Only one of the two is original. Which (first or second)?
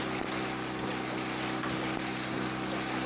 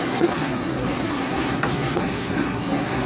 first